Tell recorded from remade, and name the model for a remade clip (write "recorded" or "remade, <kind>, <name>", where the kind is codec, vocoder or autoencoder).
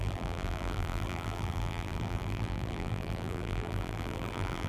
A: remade, vocoder, BigVGAN v2